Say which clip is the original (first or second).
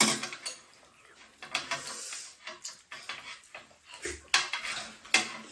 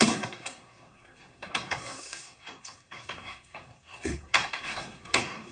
first